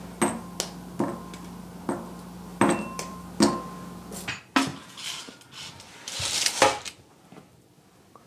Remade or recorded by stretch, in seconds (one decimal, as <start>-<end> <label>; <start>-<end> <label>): 0.0-2.5 recorded; 2.5-3.2 remade; 3.2-8.3 recorded